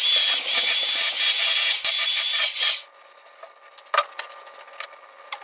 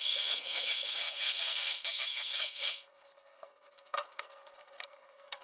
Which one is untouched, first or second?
first